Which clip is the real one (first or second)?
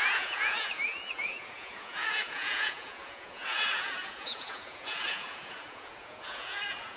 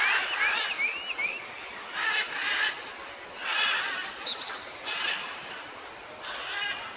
second